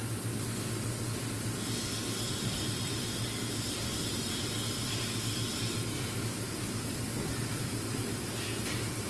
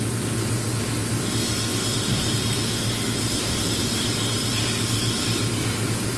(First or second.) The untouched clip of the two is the second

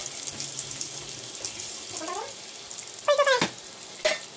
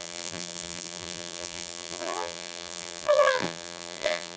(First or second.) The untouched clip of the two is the first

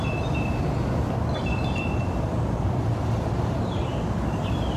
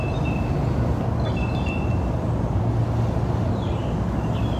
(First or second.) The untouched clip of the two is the second